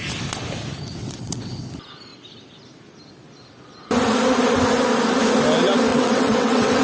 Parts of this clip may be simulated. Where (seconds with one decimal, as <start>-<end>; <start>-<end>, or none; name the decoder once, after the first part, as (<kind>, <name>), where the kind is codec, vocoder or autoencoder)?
1.0-1.7 (vocoder, WaveNeXt); 5.9-6.8